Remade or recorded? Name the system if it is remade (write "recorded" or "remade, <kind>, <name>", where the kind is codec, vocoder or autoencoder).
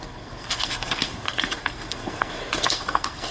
remade, codec, SNAC